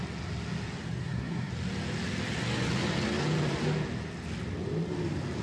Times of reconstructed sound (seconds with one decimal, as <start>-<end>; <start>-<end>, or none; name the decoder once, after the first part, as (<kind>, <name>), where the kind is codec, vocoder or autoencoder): 1.0-1.5 (codec, SNAC)